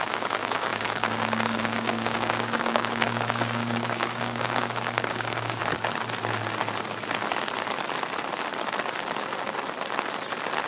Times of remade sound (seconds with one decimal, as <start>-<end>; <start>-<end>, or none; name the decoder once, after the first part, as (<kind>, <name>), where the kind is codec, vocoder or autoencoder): 0.0-5.6 (codec, DAC)